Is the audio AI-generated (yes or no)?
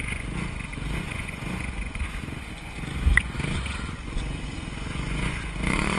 yes